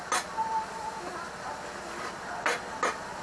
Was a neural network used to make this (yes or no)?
no